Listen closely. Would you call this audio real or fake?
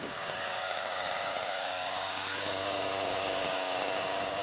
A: fake